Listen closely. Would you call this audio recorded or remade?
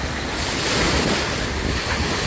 recorded